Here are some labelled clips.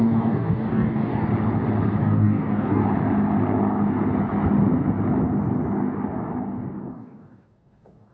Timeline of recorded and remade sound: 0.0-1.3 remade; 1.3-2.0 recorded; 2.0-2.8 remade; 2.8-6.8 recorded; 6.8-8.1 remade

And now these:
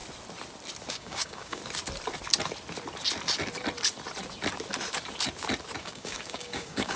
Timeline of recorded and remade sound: 0.0-0.9 recorded; 0.9-1.6 remade; 1.6-5.8 recorded; 5.8-7.0 remade

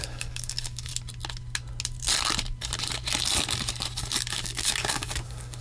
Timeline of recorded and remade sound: 0.0-0.9 remade; 0.9-4.3 recorded; 4.3-5.6 remade

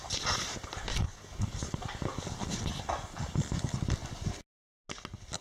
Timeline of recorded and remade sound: 0.0-0.9 recorded; 0.9-1.4 remade; 1.4-5.4 recorded

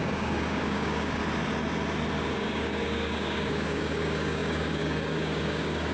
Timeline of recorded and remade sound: 0.0-1.2 remade; 1.2-2.3 recorded; 2.3-5.9 remade

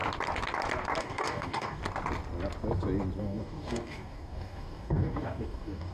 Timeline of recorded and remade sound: 0.0-1.0 recorded; 1.0-1.8 remade; 1.8-3.2 recorded; 3.2-5.9 remade

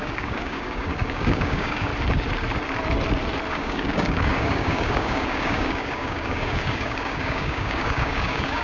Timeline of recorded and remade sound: 0.0-1.9 remade; 1.9-3.5 recorded; 3.5-8.6 remade

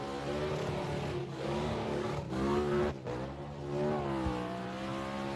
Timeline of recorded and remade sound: 0.0-1.2 recorded; 1.2-2.8 remade; 2.8-5.4 recorded